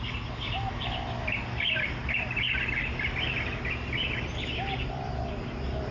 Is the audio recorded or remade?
recorded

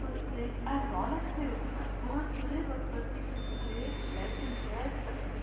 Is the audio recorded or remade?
recorded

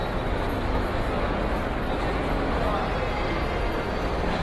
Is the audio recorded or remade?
recorded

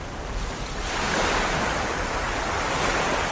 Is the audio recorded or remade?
recorded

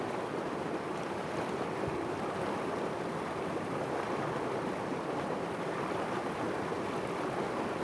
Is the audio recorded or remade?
recorded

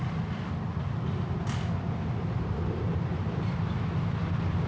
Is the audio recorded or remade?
recorded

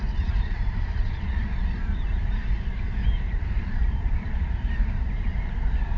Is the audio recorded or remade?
remade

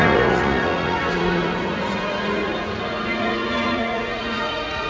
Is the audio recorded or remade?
remade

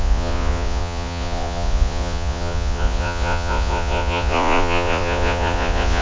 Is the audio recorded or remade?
remade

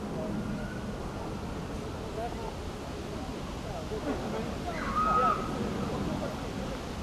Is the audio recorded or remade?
recorded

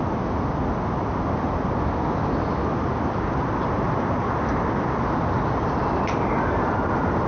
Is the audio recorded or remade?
recorded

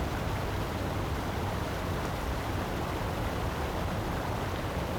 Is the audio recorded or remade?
remade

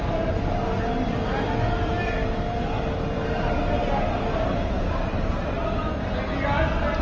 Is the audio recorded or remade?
recorded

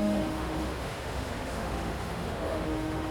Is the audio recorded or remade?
remade